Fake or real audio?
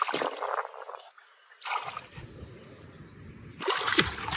real